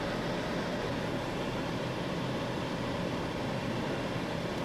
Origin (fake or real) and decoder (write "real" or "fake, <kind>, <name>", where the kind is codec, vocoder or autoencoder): real